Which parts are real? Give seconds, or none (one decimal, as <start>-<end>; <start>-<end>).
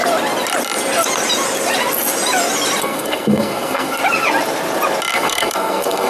0.0-2.8; 4.0-5.1